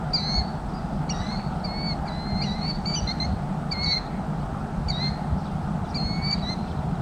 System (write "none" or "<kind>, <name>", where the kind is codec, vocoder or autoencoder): none